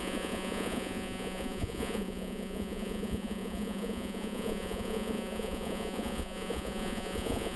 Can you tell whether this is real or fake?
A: fake